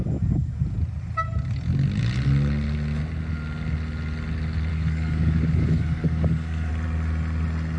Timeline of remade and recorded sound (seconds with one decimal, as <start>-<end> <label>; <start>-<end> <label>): 0.0-4.7 recorded; 4.7-6.7 remade; 6.7-7.8 recorded

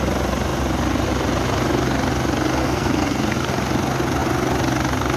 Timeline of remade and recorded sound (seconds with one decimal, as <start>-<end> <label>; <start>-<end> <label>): 0.0-2.6 recorded; 2.6-3.5 remade; 3.5-5.2 recorded

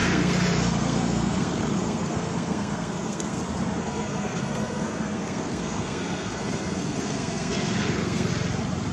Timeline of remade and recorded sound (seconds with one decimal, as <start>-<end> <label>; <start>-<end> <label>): 0.0-3.4 remade; 3.4-3.8 recorded; 3.8-8.3 remade; 8.3-8.9 recorded

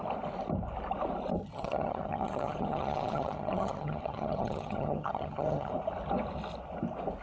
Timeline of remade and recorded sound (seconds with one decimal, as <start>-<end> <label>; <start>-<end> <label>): 0.0-1.4 recorded; 1.4-5.7 remade; 5.7-7.2 recorded

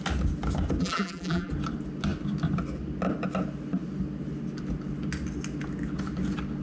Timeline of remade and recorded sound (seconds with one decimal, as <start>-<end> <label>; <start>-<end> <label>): 0.0-0.8 recorded; 0.8-1.5 remade; 1.5-6.6 recorded